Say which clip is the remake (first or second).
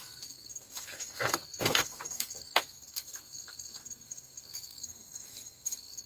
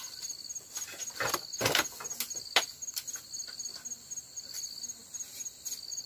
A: first